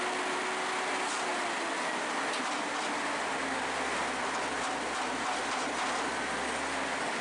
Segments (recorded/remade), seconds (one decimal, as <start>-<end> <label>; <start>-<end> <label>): 0.0-7.2 recorded